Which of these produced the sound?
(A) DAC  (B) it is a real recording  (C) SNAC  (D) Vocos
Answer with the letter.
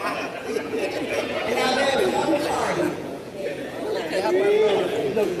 D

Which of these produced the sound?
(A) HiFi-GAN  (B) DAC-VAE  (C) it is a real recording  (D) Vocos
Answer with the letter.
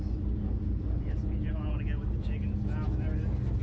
C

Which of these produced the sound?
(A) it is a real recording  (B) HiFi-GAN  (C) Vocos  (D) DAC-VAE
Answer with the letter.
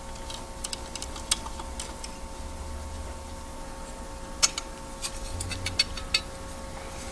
A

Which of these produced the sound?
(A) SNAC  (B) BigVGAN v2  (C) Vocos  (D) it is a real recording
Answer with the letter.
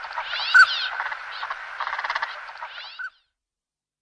D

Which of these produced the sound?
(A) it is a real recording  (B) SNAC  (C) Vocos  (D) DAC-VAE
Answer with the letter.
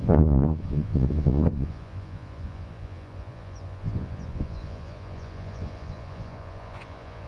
C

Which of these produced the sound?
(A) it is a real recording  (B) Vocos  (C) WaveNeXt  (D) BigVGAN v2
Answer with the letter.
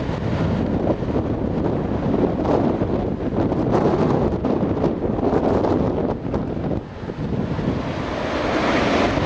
A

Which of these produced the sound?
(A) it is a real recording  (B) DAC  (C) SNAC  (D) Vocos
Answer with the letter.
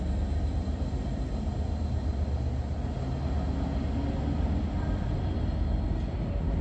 A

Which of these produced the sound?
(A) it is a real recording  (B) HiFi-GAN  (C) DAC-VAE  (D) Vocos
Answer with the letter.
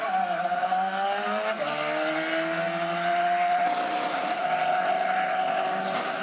A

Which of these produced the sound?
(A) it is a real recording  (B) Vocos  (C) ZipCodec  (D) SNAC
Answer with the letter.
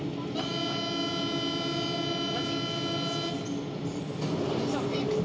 A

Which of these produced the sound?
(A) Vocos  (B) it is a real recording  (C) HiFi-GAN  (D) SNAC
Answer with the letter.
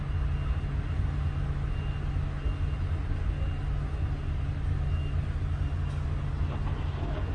B